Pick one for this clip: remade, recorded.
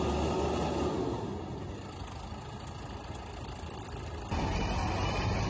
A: recorded